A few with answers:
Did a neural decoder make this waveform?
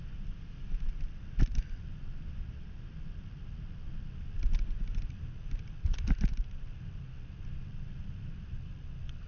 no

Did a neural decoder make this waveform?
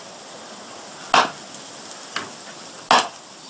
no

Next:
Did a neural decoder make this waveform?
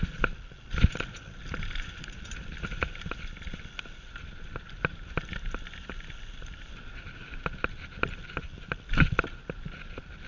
no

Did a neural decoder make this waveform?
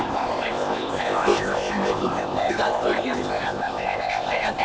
yes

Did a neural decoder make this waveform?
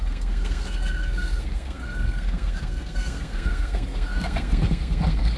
yes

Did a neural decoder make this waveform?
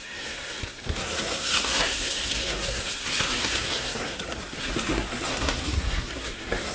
yes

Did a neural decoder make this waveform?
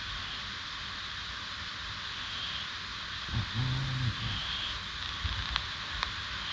no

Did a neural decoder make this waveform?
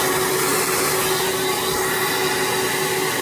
no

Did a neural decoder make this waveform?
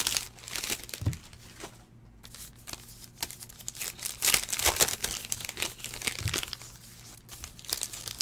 no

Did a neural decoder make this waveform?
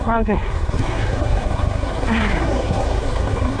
yes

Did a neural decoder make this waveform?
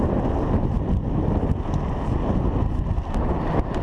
no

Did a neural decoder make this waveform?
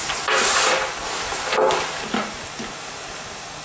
no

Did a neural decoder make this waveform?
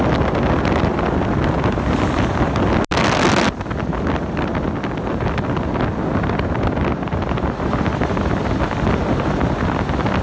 no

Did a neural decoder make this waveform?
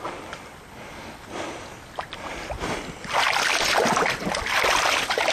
no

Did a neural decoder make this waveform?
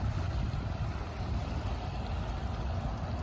no